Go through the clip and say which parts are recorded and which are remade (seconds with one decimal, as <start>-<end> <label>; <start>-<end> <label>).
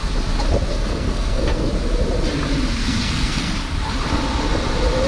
0.0-0.7 recorded; 0.7-1.7 remade; 1.7-2.8 recorded; 2.8-3.5 remade; 3.5-5.1 recorded